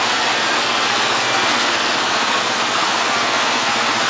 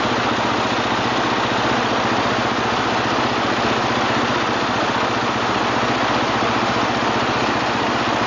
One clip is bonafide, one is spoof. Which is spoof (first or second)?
first